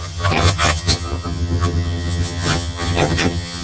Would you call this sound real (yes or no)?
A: no